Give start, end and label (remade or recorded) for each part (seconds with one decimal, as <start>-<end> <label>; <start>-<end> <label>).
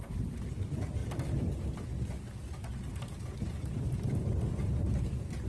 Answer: 0.0-1.0 remade; 1.0-2.8 recorded; 2.8-5.5 remade